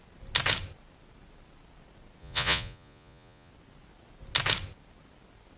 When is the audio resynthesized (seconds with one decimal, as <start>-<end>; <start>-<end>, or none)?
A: 2.2-3.5